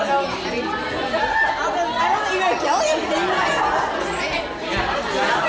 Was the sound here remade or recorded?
recorded